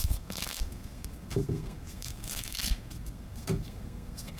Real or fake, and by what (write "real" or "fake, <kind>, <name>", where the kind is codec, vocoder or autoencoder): fake, codec, SNAC